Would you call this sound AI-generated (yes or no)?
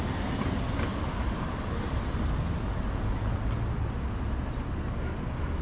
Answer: no